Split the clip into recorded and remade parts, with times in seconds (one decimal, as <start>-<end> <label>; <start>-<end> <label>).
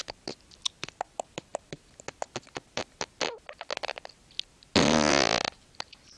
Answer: 0.0-6.2 recorded